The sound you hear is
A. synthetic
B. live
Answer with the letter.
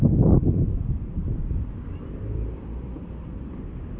A